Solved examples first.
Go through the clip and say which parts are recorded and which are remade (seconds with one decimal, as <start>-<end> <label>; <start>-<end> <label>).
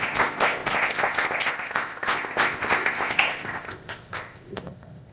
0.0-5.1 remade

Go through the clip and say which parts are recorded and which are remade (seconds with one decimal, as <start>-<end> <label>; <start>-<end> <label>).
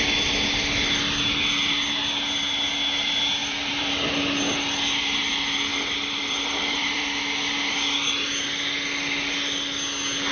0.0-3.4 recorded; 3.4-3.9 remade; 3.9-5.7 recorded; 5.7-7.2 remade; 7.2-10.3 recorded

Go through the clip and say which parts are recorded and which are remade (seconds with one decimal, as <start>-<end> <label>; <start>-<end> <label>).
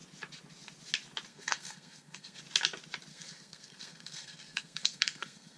0.0-1.3 recorded; 1.3-2.4 remade; 2.4-3.1 recorded; 3.1-5.6 remade